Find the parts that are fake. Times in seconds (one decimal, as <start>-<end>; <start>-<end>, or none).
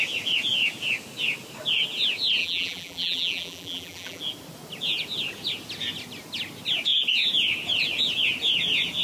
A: 2.4-4.2